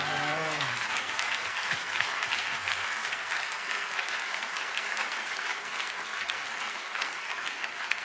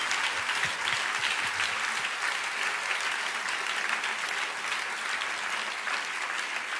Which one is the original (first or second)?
second